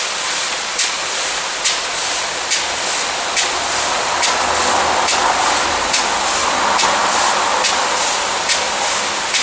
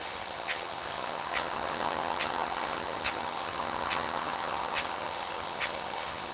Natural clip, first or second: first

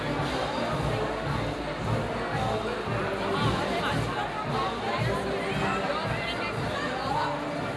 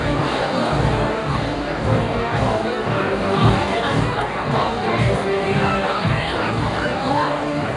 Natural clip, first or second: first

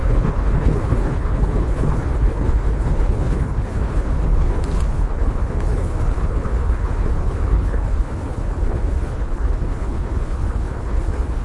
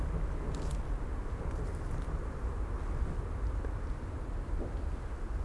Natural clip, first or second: second